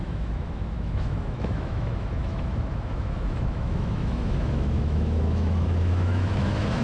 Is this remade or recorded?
remade